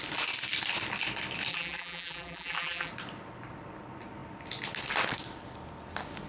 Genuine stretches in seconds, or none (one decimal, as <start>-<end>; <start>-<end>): 0.0-1.5; 2.9-6.3